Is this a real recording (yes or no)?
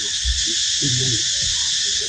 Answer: yes